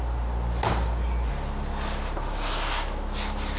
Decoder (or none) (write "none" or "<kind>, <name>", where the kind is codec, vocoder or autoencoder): none